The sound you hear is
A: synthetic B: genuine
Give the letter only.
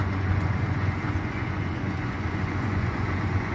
A